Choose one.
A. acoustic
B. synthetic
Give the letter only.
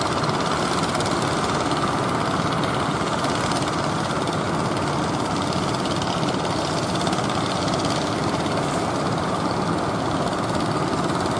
A